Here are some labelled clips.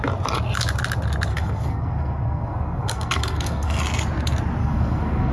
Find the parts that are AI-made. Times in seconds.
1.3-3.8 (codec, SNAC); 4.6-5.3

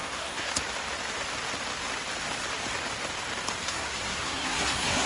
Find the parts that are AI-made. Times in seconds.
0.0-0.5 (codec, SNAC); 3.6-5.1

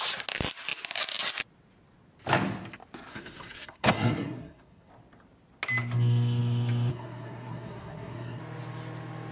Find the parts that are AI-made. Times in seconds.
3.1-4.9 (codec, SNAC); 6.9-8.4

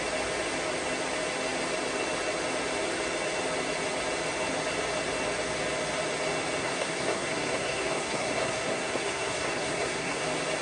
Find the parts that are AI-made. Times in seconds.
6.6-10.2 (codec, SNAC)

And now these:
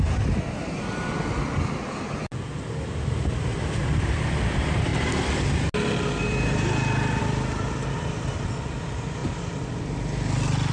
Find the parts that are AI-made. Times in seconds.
none

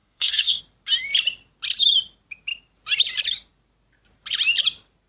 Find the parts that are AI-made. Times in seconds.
0.0-0.6 (codec, SNAC)

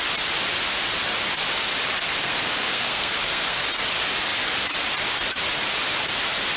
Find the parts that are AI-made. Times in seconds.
2.2-3.6 (codec, SNAC)

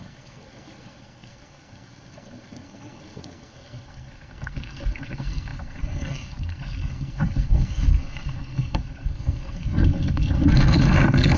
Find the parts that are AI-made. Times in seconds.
0.0-11.4 (codec, SNAC)